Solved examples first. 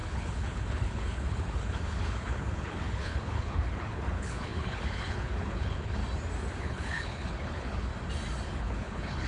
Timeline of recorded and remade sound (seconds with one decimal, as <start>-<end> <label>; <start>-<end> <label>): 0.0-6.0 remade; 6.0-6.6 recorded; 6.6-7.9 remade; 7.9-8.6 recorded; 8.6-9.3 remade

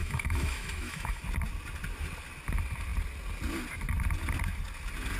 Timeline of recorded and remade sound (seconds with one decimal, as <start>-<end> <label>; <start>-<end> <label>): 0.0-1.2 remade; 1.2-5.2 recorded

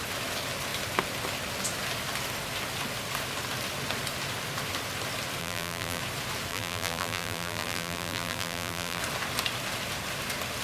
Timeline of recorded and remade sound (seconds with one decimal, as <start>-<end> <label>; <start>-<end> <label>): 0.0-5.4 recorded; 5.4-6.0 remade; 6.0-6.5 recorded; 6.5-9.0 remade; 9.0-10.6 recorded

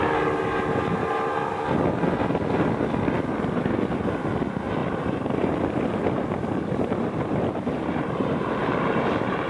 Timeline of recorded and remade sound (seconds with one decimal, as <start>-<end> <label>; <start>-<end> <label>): 0.0-4.8 recorded; 4.8-9.5 remade